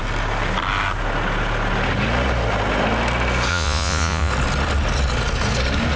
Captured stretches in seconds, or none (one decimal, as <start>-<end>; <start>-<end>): 0.0-3.5; 4.3-6.0